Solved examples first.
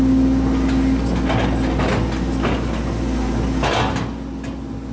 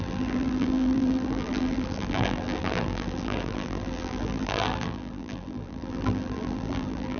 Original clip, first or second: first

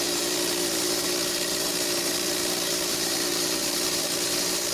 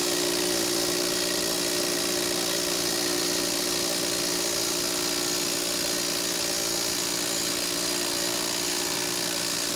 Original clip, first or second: second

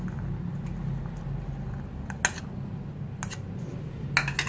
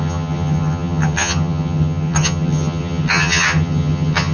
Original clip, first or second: first